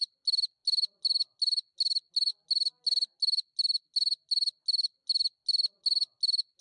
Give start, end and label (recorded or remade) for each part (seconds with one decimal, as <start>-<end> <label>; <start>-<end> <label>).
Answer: 0.0-6.6 recorded